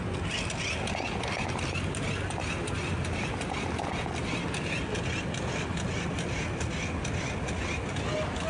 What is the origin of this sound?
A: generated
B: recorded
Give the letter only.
B